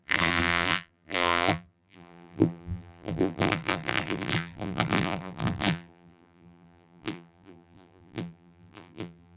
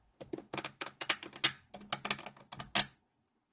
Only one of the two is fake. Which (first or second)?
first